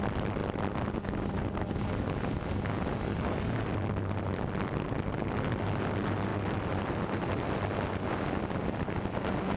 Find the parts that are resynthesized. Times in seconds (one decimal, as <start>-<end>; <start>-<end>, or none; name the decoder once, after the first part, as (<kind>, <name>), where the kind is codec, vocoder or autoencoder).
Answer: none